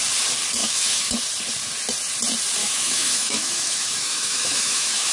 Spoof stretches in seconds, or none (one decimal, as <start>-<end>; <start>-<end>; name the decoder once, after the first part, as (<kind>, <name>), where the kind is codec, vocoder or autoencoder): 0.6-1.1 (autoencoder, DAC-VAE); 2.6-5.1